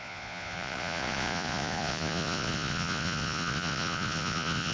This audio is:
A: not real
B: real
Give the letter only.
A